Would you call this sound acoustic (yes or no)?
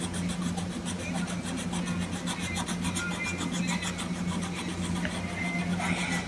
yes